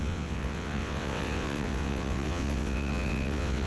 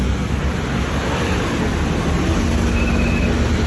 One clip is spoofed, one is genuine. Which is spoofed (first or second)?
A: first